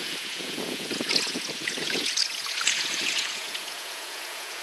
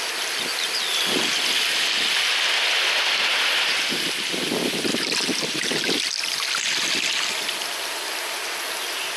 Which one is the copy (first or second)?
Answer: first